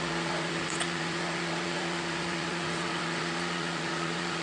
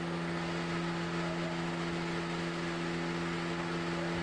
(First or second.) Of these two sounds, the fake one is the first